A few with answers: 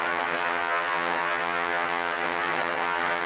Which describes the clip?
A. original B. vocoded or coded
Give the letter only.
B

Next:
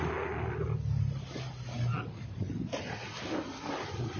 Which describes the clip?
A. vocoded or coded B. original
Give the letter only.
B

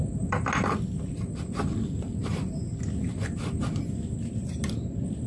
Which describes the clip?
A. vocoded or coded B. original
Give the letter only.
B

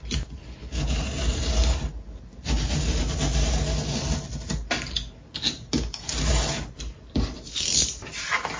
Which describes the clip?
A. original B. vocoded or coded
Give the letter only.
A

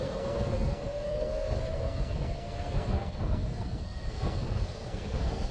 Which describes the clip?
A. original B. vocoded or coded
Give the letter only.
B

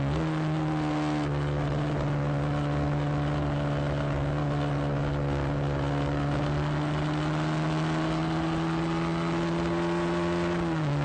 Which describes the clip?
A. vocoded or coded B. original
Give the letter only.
B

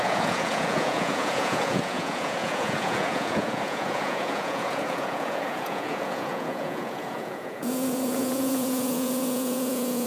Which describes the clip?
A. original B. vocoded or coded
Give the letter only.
B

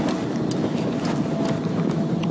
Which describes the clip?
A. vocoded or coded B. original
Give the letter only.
B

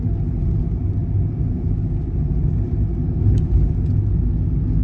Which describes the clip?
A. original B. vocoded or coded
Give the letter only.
A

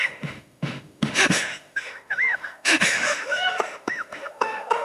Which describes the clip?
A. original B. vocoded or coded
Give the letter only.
B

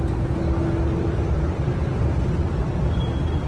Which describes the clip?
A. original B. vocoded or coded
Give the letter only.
A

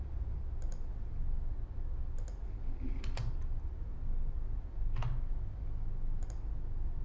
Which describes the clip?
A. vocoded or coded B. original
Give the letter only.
B